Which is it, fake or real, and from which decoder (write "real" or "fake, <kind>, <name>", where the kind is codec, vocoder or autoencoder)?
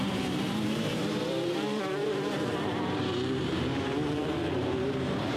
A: fake, vocoder, BigVGAN v2